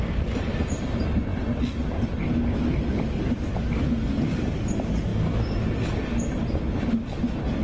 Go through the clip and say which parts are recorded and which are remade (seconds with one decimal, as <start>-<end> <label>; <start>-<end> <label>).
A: 0.0-7.6 recorded